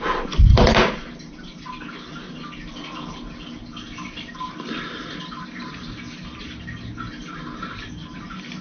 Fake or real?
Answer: real